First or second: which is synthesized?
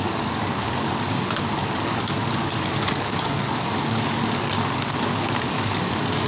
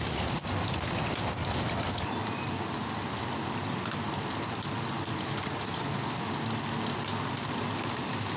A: first